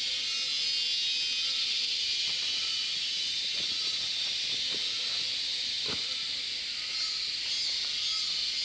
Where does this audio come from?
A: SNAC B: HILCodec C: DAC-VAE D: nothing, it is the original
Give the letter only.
D